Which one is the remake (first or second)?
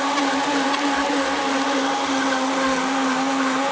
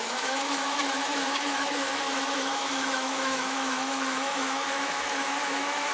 second